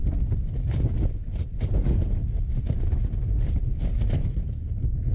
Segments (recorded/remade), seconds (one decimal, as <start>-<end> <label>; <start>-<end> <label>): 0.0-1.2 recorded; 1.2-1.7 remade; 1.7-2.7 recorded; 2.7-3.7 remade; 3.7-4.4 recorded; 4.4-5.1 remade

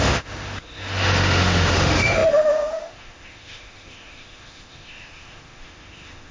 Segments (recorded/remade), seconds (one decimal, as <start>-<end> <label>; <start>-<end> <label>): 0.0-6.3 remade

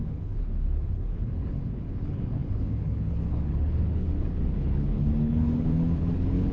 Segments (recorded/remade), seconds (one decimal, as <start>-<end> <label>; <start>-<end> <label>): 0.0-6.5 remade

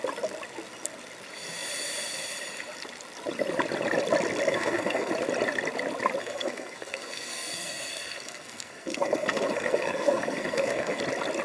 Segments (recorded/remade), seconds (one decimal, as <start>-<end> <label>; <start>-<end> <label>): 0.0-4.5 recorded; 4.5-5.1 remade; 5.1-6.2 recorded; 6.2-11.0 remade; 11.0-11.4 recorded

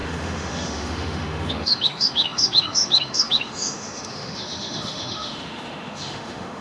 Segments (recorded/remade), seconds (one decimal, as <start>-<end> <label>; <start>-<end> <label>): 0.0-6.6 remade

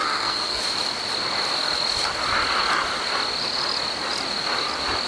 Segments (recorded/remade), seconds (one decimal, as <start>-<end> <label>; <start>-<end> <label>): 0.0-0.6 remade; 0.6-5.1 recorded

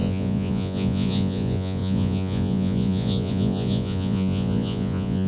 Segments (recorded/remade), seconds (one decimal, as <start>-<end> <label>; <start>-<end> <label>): 0.0-5.3 remade